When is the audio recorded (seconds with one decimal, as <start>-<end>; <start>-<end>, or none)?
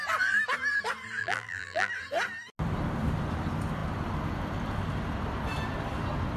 0.0-1.2; 1.9-6.4